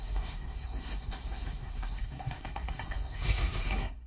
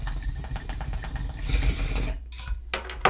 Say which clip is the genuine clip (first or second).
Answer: second